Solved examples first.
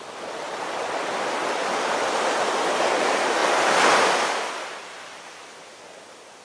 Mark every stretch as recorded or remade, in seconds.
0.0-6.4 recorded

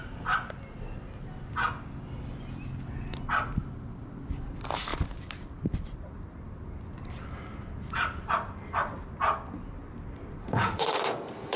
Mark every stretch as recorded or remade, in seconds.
0.0-10.4 recorded; 10.4-11.0 remade; 11.0-11.6 recorded